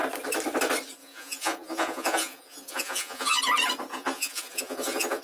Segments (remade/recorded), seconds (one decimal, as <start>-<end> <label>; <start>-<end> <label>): 0.0-1.0 recorded; 1.0-3.4 remade; 3.4-3.9 recorded; 3.9-5.2 remade